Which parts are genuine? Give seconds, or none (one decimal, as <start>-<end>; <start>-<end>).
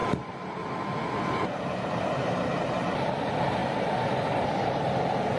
3.2-3.6; 4.8-5.4